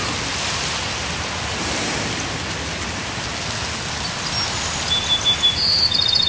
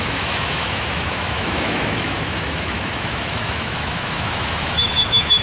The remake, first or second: second